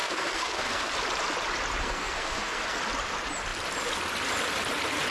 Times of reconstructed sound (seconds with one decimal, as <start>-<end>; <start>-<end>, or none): 0.0-0.9; 1.8-2.8